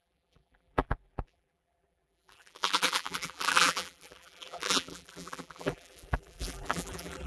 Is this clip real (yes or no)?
no